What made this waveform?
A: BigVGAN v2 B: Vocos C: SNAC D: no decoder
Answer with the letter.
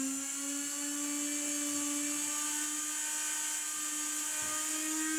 D